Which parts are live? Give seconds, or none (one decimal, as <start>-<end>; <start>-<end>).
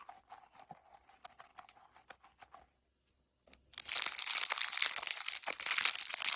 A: 0.0-6.4